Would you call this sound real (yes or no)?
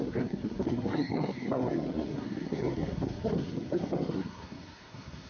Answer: no